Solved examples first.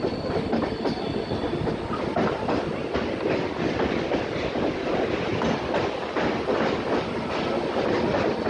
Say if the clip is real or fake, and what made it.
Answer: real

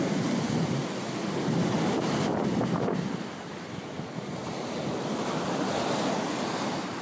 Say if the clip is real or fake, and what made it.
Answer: real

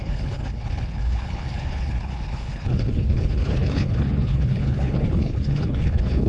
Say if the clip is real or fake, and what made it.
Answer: fake, codec, HILCodec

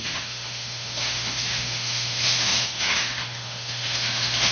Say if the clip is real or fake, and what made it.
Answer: fake, autoencoder, DAC-VAE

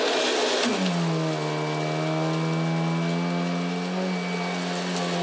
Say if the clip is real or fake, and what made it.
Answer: real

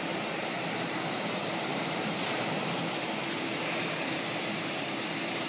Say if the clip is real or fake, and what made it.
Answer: fake, vocoder, BigVGAN v2